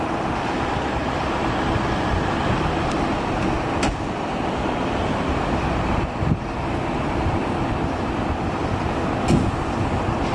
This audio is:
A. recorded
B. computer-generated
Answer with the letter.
A